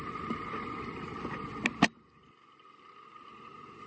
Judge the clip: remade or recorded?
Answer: recorded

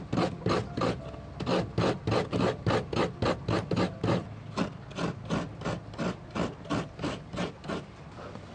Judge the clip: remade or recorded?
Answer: recorded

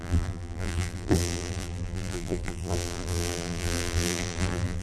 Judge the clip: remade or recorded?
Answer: remade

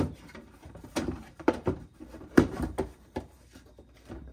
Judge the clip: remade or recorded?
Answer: remade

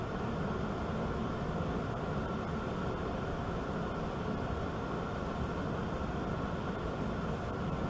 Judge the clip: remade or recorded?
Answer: remade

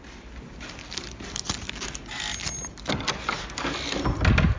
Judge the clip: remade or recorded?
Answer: recorded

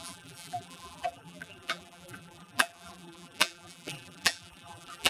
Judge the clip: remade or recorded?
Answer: remade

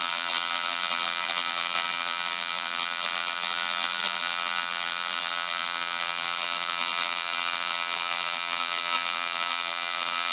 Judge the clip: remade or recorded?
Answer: remade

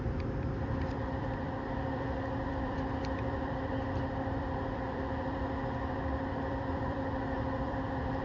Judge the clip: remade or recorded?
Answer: remade